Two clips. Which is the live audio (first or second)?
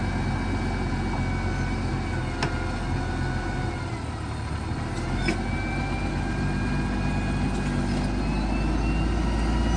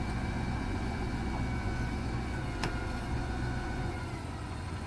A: first